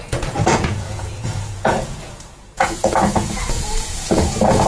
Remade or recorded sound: remade